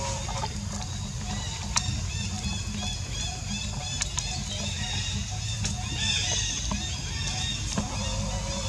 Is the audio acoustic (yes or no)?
yes